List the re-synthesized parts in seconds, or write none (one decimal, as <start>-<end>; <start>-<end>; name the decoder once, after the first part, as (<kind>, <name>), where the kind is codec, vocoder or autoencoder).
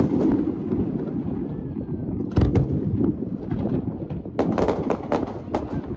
none